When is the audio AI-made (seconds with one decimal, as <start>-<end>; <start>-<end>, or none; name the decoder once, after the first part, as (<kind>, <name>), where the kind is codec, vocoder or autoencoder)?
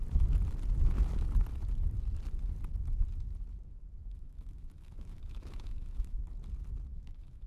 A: 4.0-6.2 (autoencoder, DAC-VAE); 6.9-7.5